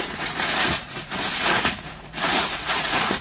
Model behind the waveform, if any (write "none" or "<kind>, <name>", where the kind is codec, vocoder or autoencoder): vocoder, Vocos